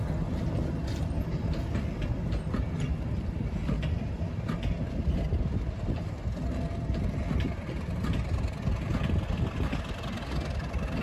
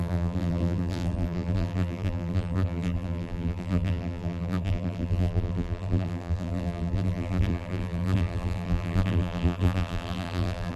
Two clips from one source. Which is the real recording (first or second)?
first